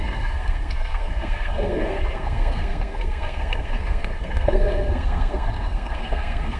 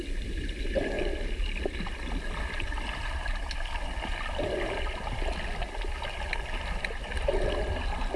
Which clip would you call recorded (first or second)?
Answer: second